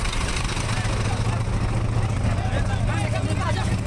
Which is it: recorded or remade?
recorded